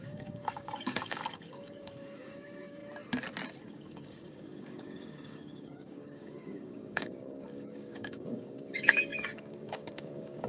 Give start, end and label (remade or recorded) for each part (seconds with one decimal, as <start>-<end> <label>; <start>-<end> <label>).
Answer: 0.0-2.8 remade; 2.8-3.6 recorded; 3.6-10.5 remade